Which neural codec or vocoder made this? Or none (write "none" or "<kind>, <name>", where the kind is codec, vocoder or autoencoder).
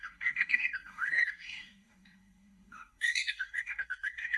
codec, SNAC